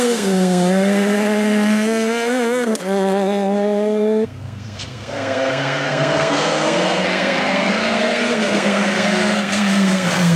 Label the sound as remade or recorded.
remade